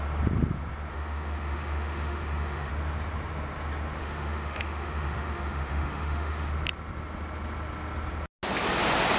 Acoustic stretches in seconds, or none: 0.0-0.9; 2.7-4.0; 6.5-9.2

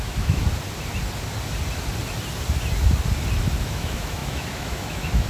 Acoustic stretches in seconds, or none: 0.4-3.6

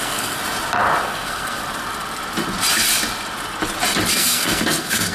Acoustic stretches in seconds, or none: 0.4-1.0; 1.6-4.1

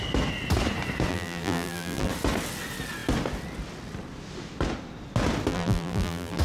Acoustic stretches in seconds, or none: 0.0-1.1; 2.1-5.5

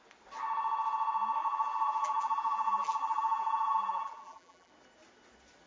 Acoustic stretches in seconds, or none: 0.0-1.4; 4.7-5.7